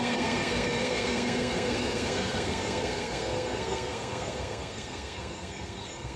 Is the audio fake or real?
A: fake